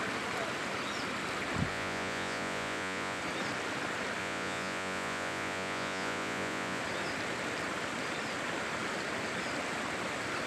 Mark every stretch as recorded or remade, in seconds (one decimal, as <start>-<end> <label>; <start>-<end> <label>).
0.0-1.7 recorded; 1.7-3.2 remade; 3.2-4.2 recorded; 4.2-6.8 remade; 6.8-10.5 recorded